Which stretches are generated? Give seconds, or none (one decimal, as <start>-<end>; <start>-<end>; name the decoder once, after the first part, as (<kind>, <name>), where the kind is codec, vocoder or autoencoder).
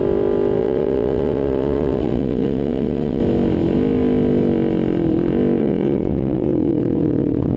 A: 0.6-3.2 (vocoder, WaveNeXt); 5.6-7.6